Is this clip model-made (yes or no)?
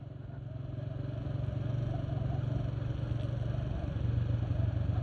no